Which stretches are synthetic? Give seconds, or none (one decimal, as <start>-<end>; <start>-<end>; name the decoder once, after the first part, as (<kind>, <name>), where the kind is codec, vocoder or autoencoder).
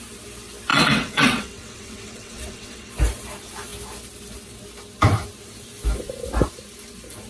0.7-2.9 (vocoder, WaveNeXt)